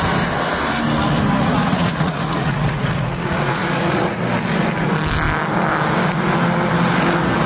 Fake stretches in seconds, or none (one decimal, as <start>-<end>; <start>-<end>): 1.4-4.2